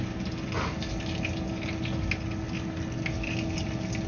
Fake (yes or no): no